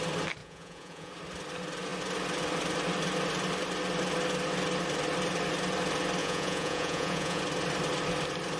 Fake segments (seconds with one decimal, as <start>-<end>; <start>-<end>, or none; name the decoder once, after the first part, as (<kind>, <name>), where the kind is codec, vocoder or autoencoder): 0.4-1.1 (vocoder, Vocos); 6.2-7.4